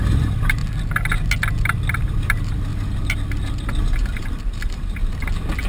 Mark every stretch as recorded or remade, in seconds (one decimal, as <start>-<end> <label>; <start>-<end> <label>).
0.0-0.6 remade; 0.6-2.0 recorded; 2.0-2.7 remade; 2.7-3.8 recorded; 3.8-5.0 remade; 5.0-5.7 recorded